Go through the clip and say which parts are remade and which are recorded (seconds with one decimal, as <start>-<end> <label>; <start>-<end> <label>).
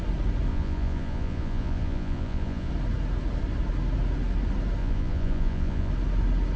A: 0.0-0.5 recorded; 0.5-2.7 remade; 2.7-4.8 recorded; 4.8-5.9 remade; 5.9-6.6 recorded